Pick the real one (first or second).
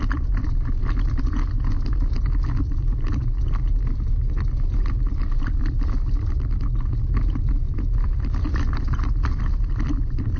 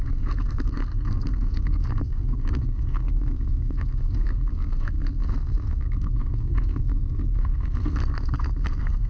first